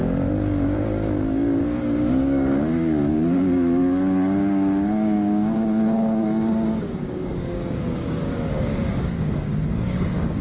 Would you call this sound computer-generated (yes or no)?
yes